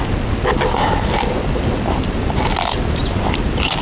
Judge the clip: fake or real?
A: real